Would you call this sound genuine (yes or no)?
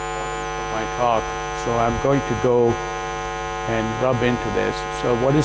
yes